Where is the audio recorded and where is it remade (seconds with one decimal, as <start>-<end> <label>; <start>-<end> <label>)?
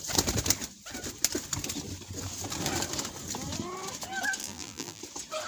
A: 0.0-4.4 recorded; 4.4-5.0 remade; 5.0-5.5 recorded